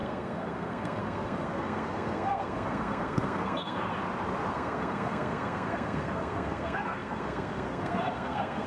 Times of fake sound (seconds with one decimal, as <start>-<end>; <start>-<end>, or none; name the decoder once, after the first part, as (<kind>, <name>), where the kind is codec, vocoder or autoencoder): 0.0-3.9 (codec, SNAC); 4.5-8.7

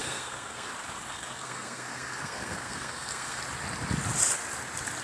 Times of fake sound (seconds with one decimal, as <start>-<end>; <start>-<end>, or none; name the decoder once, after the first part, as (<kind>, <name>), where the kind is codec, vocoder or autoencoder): 0.0-0.7 (codec, SNAC); 1.1-3.4

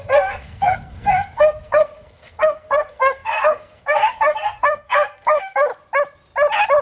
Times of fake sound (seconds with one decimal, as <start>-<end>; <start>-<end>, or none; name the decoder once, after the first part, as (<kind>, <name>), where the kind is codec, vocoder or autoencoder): 0.0-5.7 (codec, SNAC)

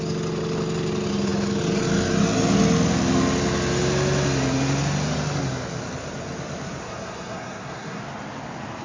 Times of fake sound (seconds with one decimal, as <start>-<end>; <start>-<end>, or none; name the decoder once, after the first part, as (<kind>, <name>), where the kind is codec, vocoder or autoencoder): 6.8-8.0 (codec, SNAC)

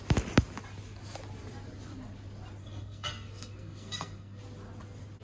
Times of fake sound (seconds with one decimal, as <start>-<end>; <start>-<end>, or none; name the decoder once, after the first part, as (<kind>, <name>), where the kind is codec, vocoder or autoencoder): 2.6-4.4 (codec, SNAC)

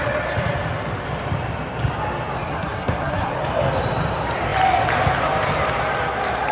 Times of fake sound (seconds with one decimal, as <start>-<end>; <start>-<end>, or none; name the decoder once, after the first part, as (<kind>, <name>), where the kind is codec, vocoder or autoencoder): 2.5-3.3 (codec, SNAC)

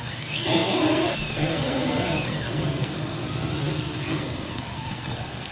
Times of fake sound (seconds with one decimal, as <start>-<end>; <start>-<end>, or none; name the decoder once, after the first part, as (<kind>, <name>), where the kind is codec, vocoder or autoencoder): 0.0-3.2 (codec, SNAC); 3.7-5.5

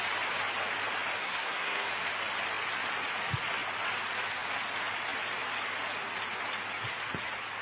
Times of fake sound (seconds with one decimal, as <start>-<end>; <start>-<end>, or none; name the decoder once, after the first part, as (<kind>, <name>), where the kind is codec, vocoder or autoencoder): 1.2-1.9 (codec, SNAC)